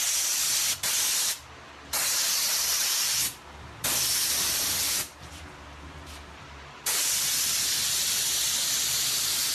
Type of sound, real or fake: real